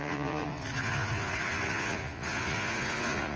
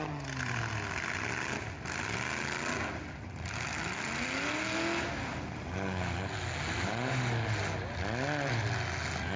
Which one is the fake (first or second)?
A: first